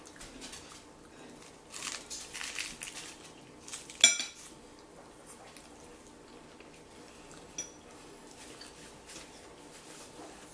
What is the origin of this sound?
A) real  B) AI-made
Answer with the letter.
A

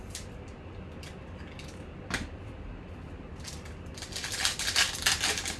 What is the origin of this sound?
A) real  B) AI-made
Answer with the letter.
A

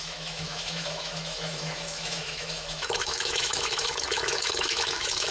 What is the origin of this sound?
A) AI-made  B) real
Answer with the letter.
A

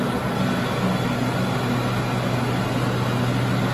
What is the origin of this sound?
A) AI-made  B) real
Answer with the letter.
B